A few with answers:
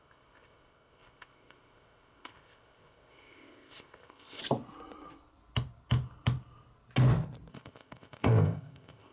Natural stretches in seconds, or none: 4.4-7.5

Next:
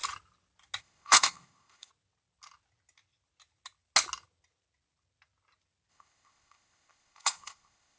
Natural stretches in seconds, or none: 0.0-0.8; 1.9-5.9

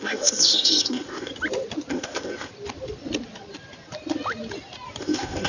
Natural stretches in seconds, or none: 1.3-1.9; 2.5-5.0

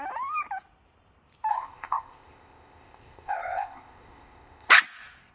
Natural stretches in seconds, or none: 0.0-1.5; 4.7-5.3

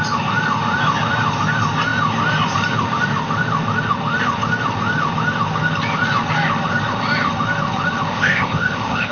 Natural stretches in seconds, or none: 0.0-8.1

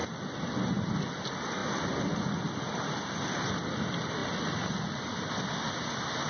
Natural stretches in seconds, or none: 0.0-6.3